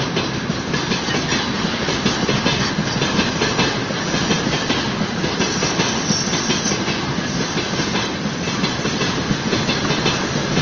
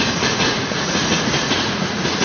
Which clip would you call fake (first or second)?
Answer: second